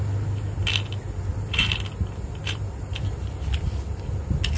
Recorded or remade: recorded